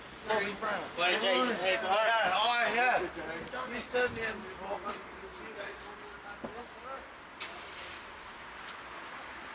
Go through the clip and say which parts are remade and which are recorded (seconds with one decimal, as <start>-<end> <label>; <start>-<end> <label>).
0.0-9.5 recorded